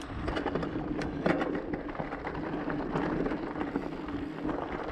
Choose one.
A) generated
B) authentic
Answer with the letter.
B